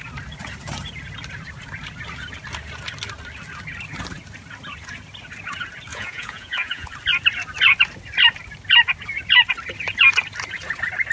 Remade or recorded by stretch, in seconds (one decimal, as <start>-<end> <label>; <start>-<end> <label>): 0.0-5.9 recorded; 5.9-6.9 remade; 6.9-11.1 recorded